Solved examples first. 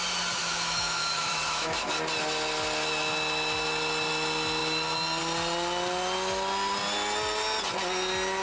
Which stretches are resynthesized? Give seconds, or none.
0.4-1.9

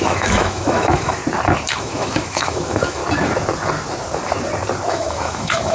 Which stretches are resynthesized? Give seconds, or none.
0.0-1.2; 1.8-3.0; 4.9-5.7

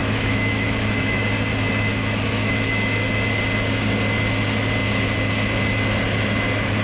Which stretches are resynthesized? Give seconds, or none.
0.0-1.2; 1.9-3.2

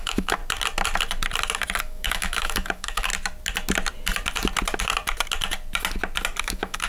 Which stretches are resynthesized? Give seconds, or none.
0.0-0.4; 1.8-3.1; 6.4-6.9

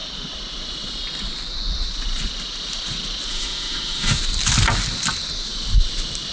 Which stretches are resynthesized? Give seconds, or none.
3.3-4.2

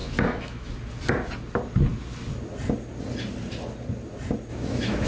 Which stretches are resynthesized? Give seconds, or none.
0.0-0.7; 4.5-5.1

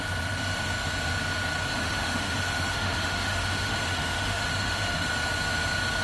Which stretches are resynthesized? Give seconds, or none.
1.7-5.1